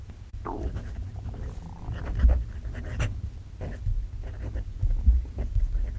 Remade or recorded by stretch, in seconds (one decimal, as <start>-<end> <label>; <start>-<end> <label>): 0.0-6.0 recorded